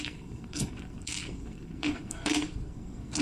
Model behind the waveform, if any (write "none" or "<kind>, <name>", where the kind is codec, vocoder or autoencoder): codec, SNAC